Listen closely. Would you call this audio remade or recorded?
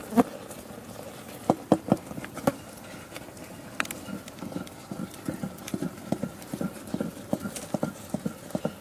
recorded